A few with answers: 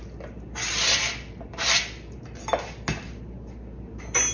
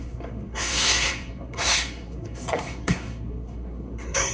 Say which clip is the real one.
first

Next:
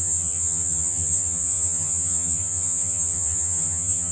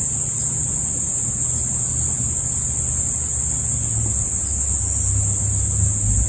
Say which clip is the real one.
second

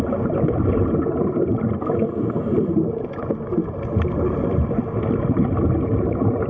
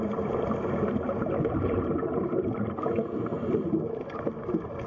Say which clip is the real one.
second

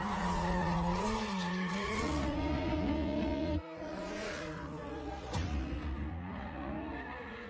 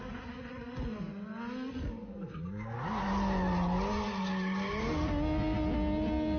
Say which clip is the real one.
second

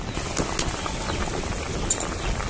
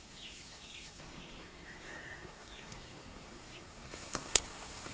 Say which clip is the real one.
first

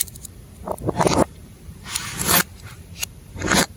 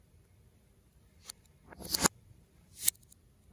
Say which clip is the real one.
second